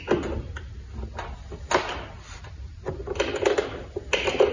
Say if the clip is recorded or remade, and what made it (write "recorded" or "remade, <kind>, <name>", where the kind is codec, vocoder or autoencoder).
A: recorded